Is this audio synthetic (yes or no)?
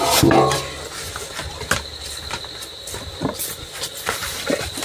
no